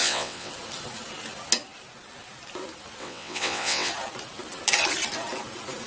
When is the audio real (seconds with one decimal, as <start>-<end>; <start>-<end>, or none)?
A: 0.5-3.0; 3.9-5.9